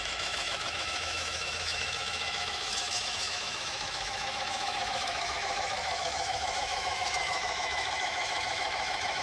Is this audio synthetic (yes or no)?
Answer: yes